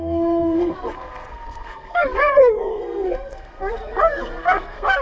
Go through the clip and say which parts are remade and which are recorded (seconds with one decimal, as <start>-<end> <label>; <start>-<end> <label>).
0.0-5.0 remade